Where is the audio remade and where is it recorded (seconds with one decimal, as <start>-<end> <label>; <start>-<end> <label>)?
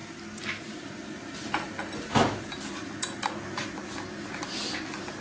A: 0.0-5.2 recorded